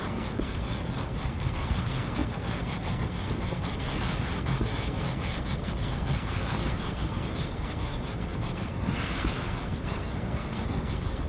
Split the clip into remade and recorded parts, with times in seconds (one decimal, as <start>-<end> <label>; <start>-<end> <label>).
0.0-11.3 remade